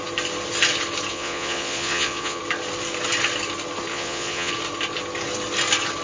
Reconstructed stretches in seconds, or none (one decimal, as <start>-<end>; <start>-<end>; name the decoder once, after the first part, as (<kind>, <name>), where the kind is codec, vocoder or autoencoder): 1.1-2.4 (vocoder, Vocos); 3.9-4.5